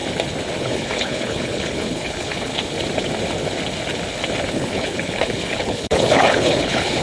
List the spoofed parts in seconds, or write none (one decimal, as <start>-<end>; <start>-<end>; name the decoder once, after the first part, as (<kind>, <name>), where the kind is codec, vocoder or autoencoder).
0.6-2.5 (codec, HILCodec); 4.5-7.0